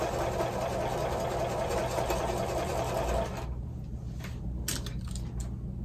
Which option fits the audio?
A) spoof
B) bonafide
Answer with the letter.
B